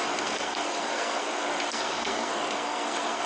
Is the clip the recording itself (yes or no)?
no